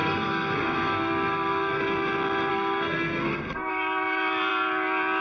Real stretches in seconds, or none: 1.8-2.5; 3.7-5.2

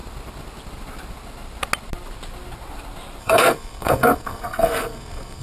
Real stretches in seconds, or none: 0.0-3.2

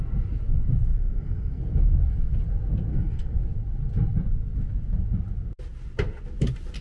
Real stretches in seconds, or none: 0.0-0.9; 1.6-2.9; 3.4-6.8

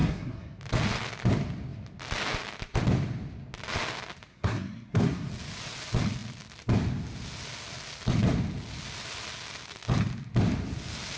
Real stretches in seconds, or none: 0.6-4.3; 5.3-11.2

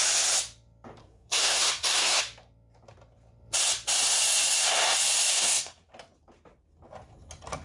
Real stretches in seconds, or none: 0.0-1.0; 2.2-5.3; 5.9-7.6

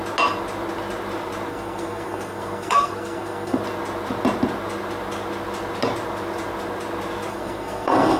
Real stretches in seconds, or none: 0.0-1.5; 3.6-7.3

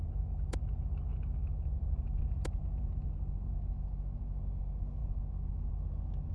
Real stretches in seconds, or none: 0.0-6.3